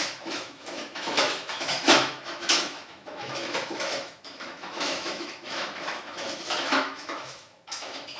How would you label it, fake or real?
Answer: fake